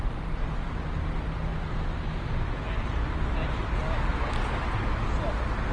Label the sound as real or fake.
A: real